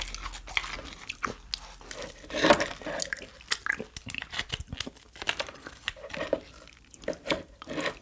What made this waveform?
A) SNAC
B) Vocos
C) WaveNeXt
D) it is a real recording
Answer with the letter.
D